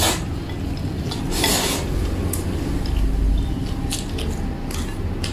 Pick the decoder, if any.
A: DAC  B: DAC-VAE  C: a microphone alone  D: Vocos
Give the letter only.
C